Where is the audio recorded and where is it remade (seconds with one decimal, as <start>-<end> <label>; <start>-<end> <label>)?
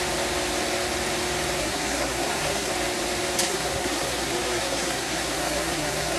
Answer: 0.0-1.6 recorded; 1.6-2.7 remade; 2.7-3.4 recorded; 3.4-6.2 remade